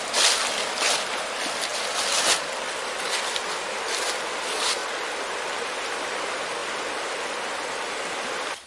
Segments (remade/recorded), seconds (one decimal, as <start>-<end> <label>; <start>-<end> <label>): 0.0-8.7 recorded